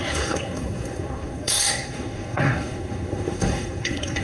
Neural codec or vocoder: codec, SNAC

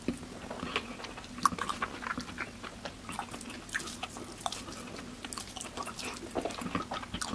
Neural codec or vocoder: none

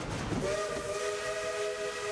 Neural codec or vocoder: none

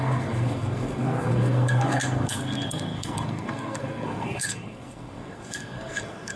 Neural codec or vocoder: codec, SNAC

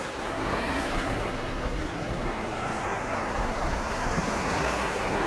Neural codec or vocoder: codec, SNAC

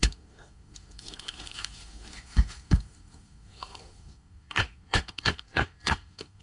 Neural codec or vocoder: codec, SNAC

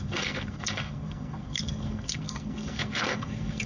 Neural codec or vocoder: codec, SNAC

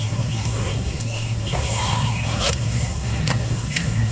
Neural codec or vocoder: codec, SNAC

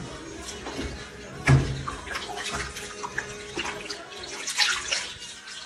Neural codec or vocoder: none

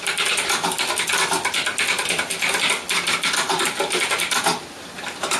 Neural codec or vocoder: none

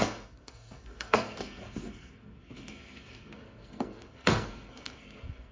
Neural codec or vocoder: codec, SNAC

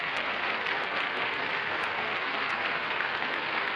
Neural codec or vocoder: codec, SNAC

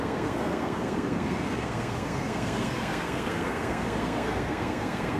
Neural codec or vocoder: codec, SNAC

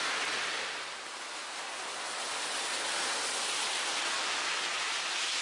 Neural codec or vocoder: none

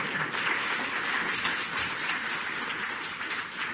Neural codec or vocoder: none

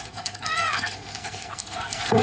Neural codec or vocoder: codec, SNAC